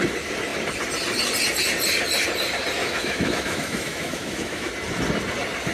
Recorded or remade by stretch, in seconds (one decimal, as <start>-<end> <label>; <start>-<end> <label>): 0.0-2.8 recorded; 2.8-4.7 remade; 4.7-5.7 recorded